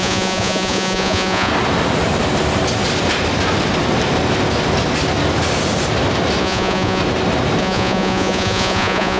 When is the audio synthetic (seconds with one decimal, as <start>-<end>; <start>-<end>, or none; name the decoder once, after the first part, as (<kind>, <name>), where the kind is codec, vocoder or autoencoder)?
0.0-1.5 (vocoder, Vocos); 6.4-7.0; 7.6-9.2